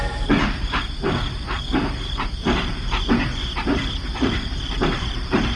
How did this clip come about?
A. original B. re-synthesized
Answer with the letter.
B